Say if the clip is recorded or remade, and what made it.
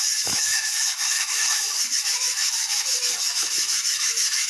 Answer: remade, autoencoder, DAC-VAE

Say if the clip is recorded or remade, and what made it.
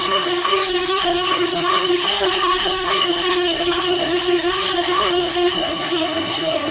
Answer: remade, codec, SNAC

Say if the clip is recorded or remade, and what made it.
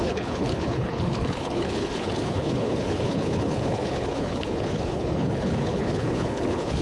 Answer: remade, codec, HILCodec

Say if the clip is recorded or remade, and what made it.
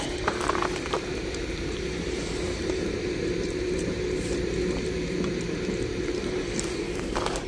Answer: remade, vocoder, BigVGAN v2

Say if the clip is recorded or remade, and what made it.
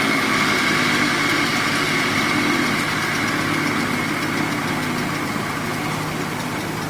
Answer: recorded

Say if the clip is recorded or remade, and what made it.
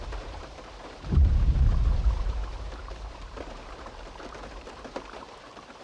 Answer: remade, vocoder, BigVGAN v2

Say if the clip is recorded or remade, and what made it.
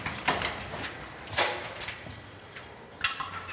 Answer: recorded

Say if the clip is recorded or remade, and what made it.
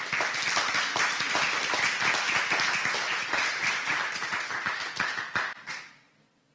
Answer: recorded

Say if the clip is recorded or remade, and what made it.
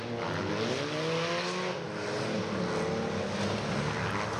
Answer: recorded